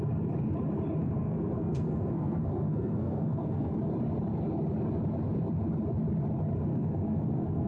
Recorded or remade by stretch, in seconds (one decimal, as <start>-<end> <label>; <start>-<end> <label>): 0.0-1.0 recorded; 1.0-3.7 remade; 3.7-6.7 recorded; 6.7-7.7 remade